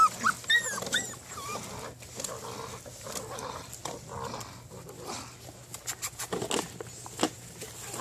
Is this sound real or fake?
real